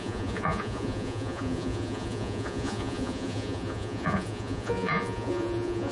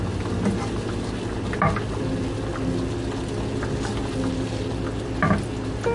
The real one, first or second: second